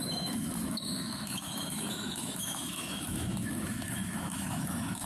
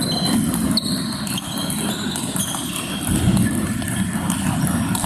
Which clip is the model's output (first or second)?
first